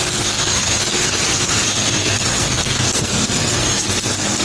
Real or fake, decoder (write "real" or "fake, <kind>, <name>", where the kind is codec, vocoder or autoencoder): fake, codec, SNAC